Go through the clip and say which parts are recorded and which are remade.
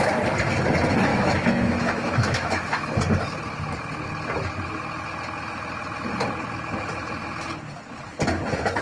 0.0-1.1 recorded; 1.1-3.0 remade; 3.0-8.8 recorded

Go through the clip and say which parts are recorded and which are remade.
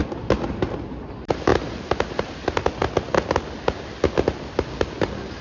0.0-5.4 recorded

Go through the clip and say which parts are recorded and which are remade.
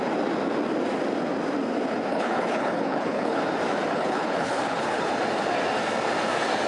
0.0-2.1 recorded; 2.1-3.4 remade; 3.4-3.9 recorded; 3.9-5.1 remade; 5.1-6.7 recorded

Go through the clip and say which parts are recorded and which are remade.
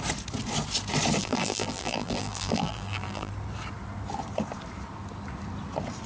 0.0-1.2 recorded; 1.2-3.3 remade; 3.3-6.1 recorded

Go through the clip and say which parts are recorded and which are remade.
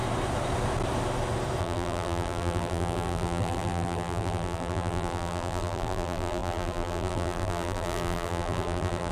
0.0-1.6 recorded; 1.6-9.1 remade